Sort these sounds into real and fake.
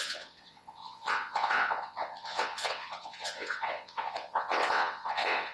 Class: fake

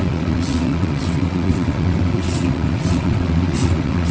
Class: fake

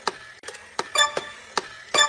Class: real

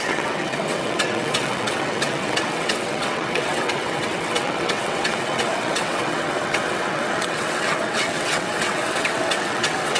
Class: fake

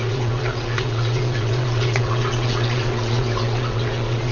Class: fake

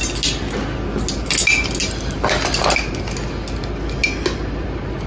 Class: real